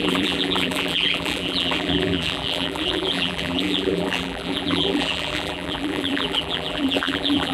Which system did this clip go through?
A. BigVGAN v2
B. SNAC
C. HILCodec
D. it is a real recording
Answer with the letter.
A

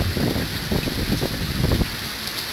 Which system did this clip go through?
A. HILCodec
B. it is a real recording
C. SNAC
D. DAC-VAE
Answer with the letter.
B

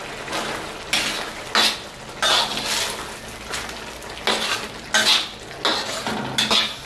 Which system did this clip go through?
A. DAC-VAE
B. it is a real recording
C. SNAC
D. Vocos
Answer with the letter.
B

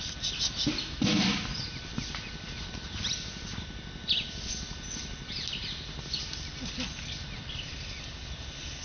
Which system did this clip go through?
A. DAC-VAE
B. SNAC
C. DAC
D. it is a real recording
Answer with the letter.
D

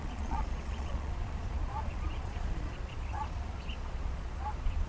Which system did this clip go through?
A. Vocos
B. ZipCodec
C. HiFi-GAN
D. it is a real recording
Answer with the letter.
A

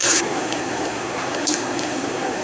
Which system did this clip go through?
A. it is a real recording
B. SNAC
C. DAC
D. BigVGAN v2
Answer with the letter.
B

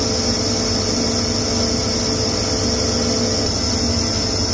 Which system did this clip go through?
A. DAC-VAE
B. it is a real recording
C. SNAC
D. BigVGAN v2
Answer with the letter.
B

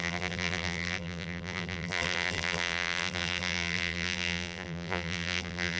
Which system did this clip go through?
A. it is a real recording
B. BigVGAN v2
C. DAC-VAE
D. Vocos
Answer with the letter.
B